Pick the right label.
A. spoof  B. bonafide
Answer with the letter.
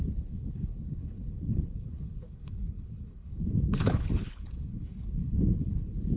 A